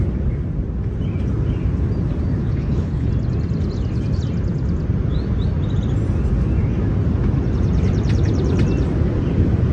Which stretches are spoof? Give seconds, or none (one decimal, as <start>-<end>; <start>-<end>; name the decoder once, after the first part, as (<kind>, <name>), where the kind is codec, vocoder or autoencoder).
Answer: 2.4-3.1 (codec, HILCodec)